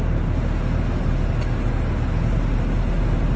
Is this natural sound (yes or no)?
yes